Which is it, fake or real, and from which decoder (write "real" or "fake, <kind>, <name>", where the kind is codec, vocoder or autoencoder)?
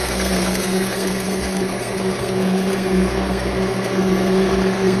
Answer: fake, codec, SNAC